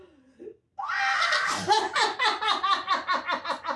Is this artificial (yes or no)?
no